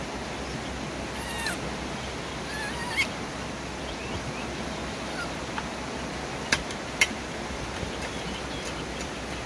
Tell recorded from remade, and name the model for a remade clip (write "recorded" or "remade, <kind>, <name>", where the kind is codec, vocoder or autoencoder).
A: recorded